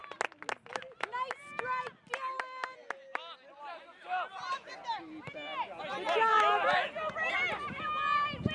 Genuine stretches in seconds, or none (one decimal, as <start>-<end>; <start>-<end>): 0.0-8.5